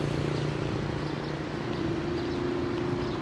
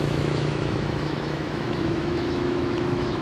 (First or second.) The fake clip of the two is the second